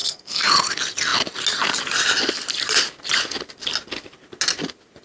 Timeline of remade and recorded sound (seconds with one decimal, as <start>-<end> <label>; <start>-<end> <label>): 0.0-0.5 remade; 0.5-5.0 recorded